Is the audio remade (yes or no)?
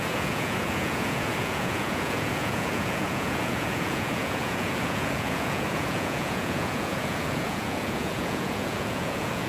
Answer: yes